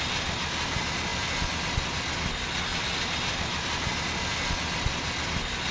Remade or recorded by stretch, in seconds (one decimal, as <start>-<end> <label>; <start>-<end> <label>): 0.0-2.7 recorded; 2.7-3.8 remade; 3.8-5.7 recorded